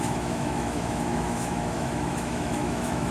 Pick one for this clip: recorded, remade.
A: remade